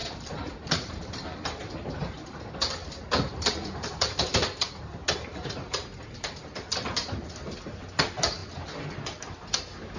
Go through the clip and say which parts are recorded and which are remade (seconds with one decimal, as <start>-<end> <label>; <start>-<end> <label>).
0.0-2.4 remade; 2.4-2.8 recorded; 2.8-7.7 remade; 7.7-10.0 recorded